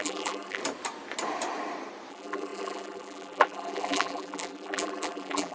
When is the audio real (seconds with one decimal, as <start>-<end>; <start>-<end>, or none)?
0.6-2.1